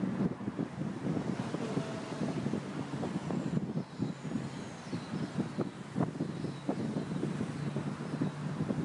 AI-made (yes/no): no